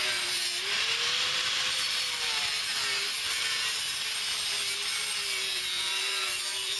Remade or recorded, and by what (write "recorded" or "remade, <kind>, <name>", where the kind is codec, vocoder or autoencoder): remade, vocoder, BigVGAN v2